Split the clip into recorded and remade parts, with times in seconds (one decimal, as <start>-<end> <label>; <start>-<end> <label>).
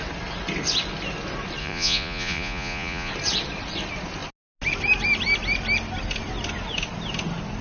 0.0-1.6 recorded; 1.6-3.1 remade; 3.1-7.6 recorded